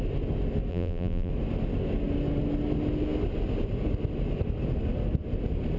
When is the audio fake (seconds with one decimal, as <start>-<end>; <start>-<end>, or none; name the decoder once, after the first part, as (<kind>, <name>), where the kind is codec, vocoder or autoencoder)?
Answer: 0.7-1.3 (vocoder, BigVGAN v2)